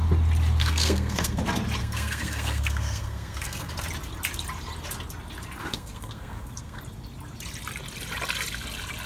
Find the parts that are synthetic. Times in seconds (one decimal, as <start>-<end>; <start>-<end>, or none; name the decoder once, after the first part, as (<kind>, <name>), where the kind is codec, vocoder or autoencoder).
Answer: 0.6-1.4 (codec, SNAC); 1.8-3.7; 5.6-6.8